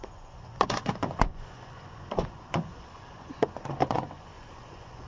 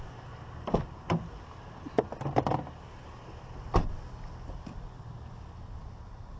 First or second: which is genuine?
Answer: second